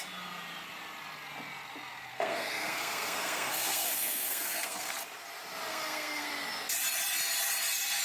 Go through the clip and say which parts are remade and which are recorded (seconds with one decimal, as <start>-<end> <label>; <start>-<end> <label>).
0.0-2.1 recorded; 2.1-4.9 remade; 4.9-5.7 recorded; 5.7-6.3 remade; 6.3-8.0 recorded